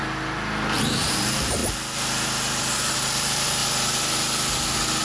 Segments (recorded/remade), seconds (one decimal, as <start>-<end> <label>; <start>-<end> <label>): 0.0-0.8 recorded; 0.8-1.6 remade; 1.6-2.6 recorded; 2.6-3.6 remade; 3.6-5.0 recorded